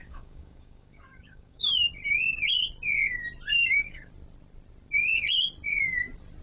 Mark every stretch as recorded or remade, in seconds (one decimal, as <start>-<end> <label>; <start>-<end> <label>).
0.0-1.9 remade; 1.9-3.5 recorded; 3.5-4.1 remade; 4.1-6.4 recorded